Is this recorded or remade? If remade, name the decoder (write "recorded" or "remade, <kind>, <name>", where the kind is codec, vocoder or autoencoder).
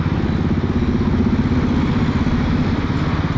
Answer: recorded